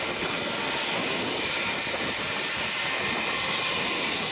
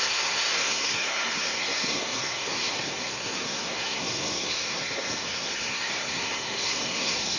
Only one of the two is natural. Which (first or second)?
first